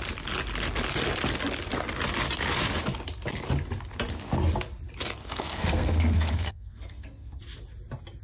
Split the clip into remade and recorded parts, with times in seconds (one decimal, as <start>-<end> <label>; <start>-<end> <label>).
0.0-5.2 recorded; 5.2-7.4 remade; 7.4-8.2 recorded